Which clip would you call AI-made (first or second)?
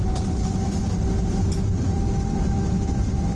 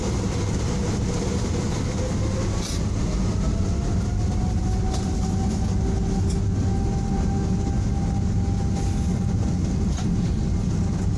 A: first